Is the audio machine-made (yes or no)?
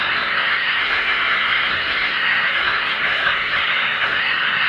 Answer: yes